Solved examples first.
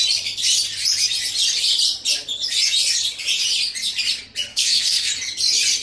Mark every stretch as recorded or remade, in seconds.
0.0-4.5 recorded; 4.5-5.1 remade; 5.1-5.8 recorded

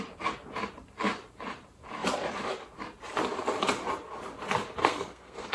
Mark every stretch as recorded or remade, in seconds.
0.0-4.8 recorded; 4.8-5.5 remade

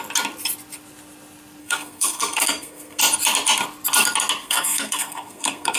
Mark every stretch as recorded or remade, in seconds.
0.0-1.6 recorded; 1.6-3.0 remade; 3.0-4.4 recorded; 4.4-5.8 remade

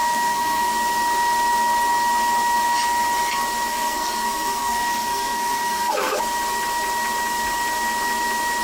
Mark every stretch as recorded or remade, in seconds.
0.0-0.7 remade; 0.7-3.7 recorded; 3.7-6.2 remade; 6.2-8.6 recorded

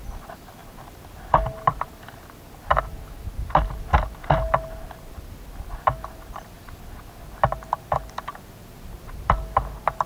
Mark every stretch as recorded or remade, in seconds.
0.0-10.1 recorded

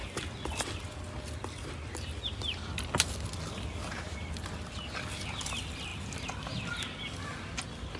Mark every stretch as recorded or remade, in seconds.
0.0-8.0 recorded

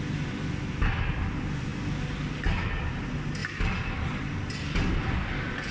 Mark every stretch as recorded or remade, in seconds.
0.0-5.7 recorded